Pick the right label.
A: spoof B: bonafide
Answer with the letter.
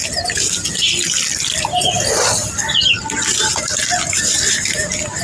B